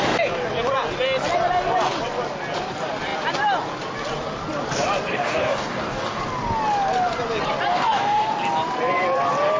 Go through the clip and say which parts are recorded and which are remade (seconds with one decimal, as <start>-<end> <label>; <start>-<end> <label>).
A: 0.0-5.1 recorded; 5.1-6.2 remade; 6.2-7.7 recorded; 7.7-8.3 remade; 8.3-9.6 recorded